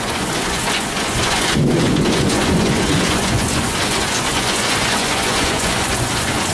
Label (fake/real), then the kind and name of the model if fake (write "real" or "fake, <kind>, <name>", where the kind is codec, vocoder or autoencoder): fake, vocoder, Vocos